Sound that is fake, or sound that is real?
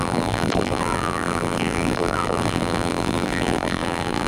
fake